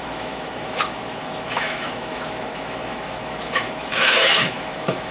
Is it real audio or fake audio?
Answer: fake